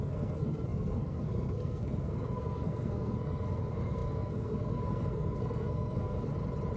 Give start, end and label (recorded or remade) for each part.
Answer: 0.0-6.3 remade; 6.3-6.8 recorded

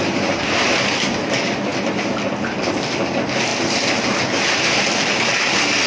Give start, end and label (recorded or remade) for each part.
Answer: 0.0-5.9 recorded

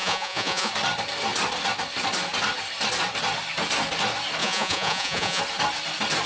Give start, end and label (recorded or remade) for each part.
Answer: 0.0-0.7 remade; 0.7-4.4 recorded; 4.4-5.4 remade; 5.4-6.3 recorded

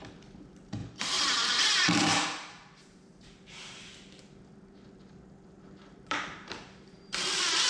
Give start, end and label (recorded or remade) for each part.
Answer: 0.0-0.8 recorded; 0.8-4.2 remade; 4.2-5.9 recorded; 5.9-7.1 remade; 7.1-7.7 recorded